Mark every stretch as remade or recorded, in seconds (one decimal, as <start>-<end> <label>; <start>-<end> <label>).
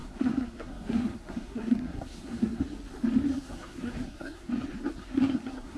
0.0-2.6 remade; 2.6-3.3 recorded; 3.3-4.5 remade; 4.5-5.0 recorded; 5.0-5.8 remade